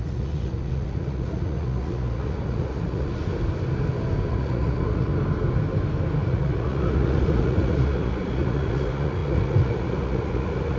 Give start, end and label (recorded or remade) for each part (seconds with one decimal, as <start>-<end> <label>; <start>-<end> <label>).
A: 0.0-3.3 remade; 3.3-4.3 recorded; 4.3-5.1 remade; 5.1-6.2 recorded; 6.2-10.8 remade